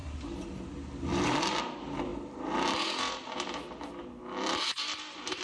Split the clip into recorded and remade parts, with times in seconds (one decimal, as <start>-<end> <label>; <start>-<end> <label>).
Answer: 0.0-5.4 recorded